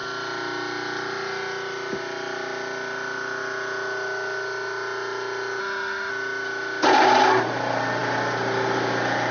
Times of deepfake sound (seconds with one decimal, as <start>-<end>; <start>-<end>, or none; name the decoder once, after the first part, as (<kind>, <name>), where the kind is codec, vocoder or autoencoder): 5.6-6.1 (autoencoder, DAC-VAE)

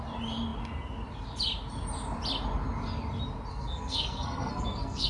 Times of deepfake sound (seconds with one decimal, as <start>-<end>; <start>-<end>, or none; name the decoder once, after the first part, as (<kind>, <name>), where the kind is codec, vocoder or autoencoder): 3.5-5.1 (codec, SNAC)

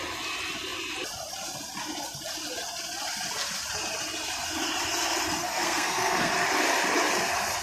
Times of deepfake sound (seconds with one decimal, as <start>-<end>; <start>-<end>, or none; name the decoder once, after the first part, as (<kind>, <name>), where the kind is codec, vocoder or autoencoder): 5.4-6.3 (codec, SNAC)

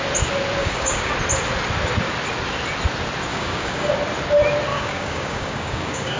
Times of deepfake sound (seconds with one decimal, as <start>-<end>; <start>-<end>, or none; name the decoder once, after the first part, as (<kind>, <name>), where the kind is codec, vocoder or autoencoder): 0.6-1.1 (codec, DAC); 3.3-3.9; 4.7-6.2